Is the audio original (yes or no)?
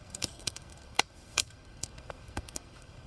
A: no